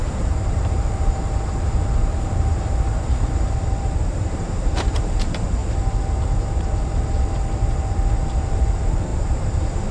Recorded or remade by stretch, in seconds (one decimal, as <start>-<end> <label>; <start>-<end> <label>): 0.0-5.6 remade; 5.6-6.3 recorded; 6.3-9.9 remade

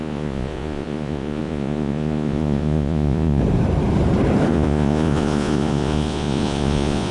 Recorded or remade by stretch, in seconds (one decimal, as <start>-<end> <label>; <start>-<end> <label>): 0.0-3.4 remade; 3.4-4.5 recorded; 4.5-7.1 remade

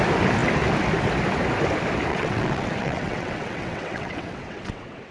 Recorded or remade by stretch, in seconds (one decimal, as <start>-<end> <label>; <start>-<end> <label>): 0.0-2.1 recorded; 2.1-5.1 remade